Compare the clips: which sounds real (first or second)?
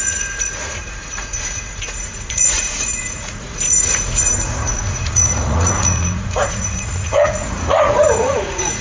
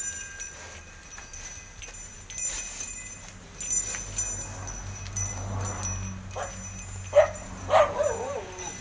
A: second